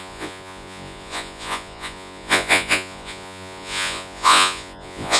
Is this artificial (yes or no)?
yes